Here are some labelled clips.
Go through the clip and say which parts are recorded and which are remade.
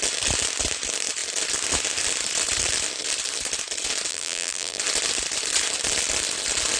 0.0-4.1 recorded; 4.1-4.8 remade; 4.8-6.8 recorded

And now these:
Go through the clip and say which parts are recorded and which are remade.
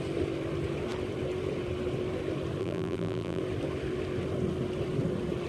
0.0-2.6 recorded; 2.6-3.4 remade; 3.4-5.5 recorded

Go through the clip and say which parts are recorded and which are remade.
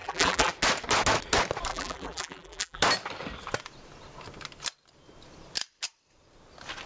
0.0-0.5 remade; 0.5-1.7 recorded; 1.7-2.8 remade; 2.8-6.9 recorded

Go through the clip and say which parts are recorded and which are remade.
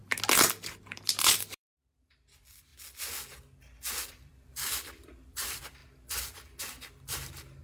0.0-0.8 recorded; 0.8-2.7 remade; 2.7-4.1 recorded; 4.1-5.8 remade; 5.8-6.9 recorded; 6.9-7.6 remade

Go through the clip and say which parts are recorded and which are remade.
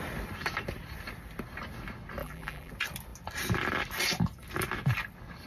0.0-2.2 recorded; 2.2-2.7 remade; 2.7-5.5 recorded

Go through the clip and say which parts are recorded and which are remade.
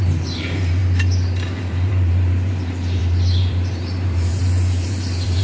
0.0-0.8 remade; 0.8-1.6 recorded; 1.6-5.4 remade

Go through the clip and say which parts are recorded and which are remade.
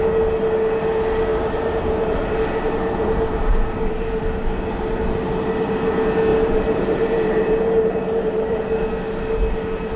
0.0-1.3 recorded; 1.3-4.2 remade; 4.2-6.3 recorded; 6.3-8.6 remade; 8.6-10.0 recorded